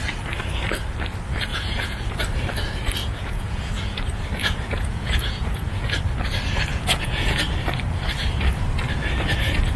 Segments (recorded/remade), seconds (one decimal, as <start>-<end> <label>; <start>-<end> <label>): 0.0-1.5 recorded; 1.5-2.1 remade; 2.1-3.0 recorded; 3.0-4.0 remade; 4.0-4.4 recorded; 4.4-6.0 remade; 6.0-6.7 recorded; 6.7-7.4 remade; 7.4-9.8 recorded